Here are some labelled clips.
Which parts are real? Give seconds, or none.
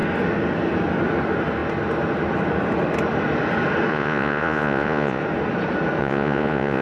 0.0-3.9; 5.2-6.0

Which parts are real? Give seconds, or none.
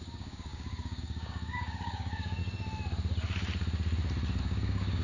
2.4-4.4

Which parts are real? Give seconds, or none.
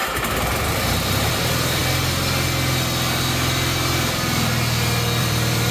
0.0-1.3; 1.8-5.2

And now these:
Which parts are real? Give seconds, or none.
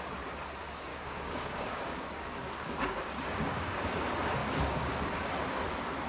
0.0-0.9; 4.0-4.4; 5.0-6.1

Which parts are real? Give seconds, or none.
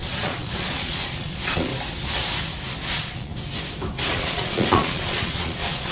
1.7-2.9; 3.3-4.1